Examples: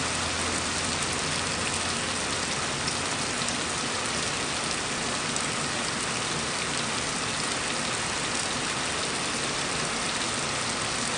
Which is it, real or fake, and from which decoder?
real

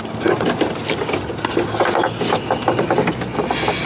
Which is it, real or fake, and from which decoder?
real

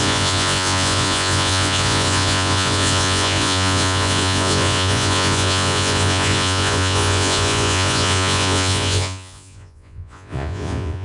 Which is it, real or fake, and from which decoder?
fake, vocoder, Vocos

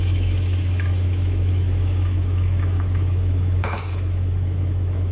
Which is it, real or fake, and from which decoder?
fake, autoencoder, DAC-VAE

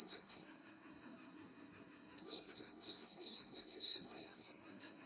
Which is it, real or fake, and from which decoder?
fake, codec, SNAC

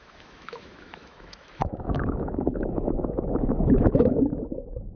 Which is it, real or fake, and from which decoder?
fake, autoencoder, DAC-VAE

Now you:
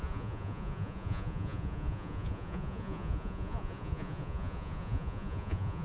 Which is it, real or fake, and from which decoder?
fake, vocoder, Vocos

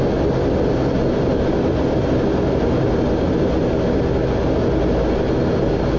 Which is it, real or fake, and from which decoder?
real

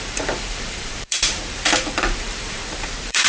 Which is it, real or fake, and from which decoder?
fake, vocoder, BigVGAN v2